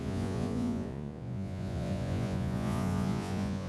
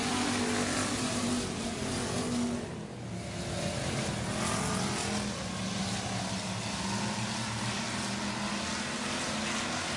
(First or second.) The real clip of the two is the second